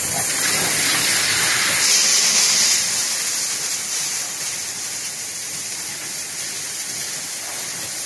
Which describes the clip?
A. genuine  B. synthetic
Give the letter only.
A